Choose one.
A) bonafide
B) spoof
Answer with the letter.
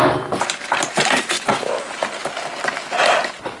A